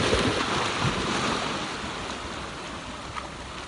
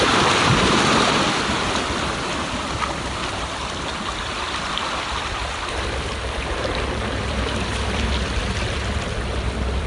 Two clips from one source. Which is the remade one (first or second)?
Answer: second